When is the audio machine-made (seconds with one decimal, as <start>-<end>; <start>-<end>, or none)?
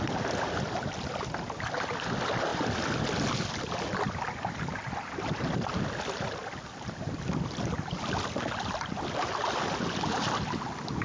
none